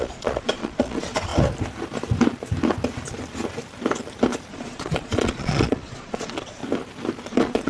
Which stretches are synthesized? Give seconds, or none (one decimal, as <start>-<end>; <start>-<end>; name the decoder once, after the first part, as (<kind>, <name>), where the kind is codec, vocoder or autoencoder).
0.0-1.3 (vocoder, Vocos); 4.5-6.6; 7.3-7.7